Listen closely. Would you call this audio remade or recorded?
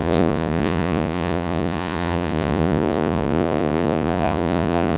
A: remade